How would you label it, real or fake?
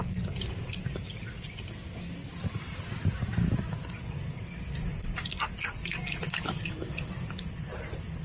real